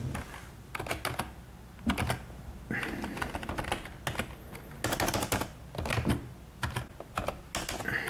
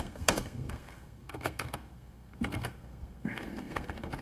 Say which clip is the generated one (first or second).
second